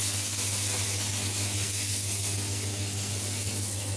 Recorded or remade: remade